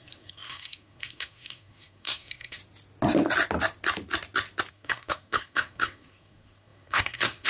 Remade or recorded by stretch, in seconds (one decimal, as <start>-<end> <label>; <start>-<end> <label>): 0.0-2.6 remade; 2.6-4.7 recorded; 4.7-7.5 remade